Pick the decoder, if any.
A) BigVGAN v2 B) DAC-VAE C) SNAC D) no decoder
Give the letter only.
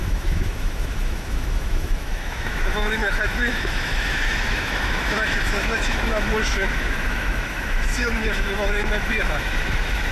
B